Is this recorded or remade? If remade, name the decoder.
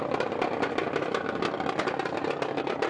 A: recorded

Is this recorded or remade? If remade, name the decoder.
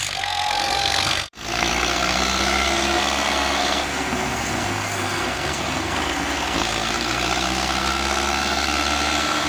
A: remade, codec, SNAC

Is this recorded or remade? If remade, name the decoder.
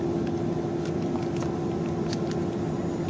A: recorded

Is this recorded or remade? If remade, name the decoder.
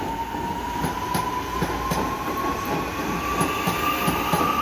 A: recorded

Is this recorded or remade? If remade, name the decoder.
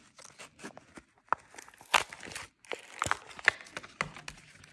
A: recorded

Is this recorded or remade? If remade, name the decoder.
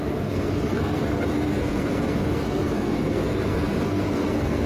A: remade, codec, SNAC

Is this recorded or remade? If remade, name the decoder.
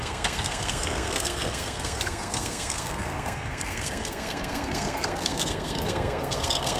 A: remade, codec, SNAC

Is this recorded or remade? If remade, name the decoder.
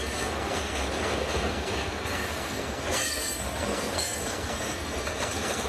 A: remade, codec, SNAC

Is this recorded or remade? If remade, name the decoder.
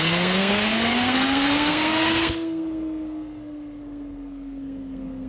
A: remade, codec, SNAC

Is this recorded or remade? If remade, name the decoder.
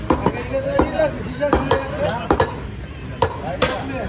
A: recorded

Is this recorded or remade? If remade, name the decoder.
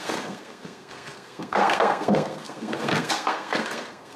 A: remade, codec, SNAC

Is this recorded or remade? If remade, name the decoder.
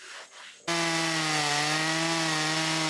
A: recorded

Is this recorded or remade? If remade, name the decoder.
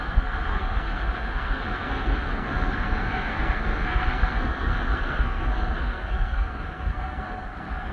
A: remade, codec, SNAC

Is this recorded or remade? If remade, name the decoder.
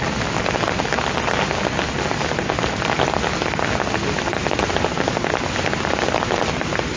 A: recorded